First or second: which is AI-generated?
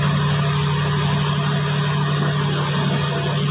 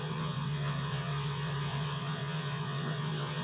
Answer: second